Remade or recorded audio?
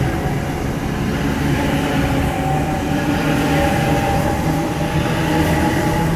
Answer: remade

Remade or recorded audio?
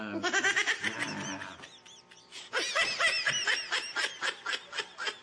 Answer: recorded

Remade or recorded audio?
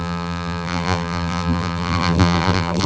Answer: remade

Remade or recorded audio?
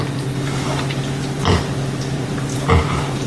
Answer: remade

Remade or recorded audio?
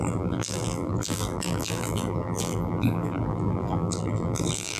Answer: remade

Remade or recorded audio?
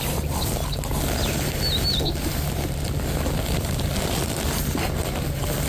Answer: recorded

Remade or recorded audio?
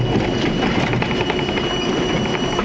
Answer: remade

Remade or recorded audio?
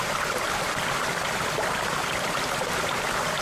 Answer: recorded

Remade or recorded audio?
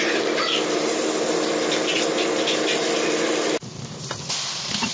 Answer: recorded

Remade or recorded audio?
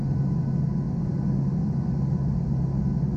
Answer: recorded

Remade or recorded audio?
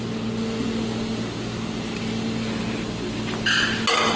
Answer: recorded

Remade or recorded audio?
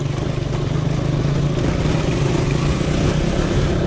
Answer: recorded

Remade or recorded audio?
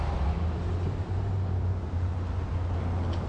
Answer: recorded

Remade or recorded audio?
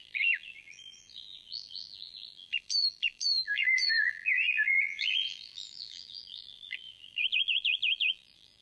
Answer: remade